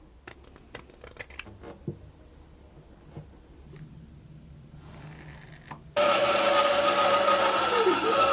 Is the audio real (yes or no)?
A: yes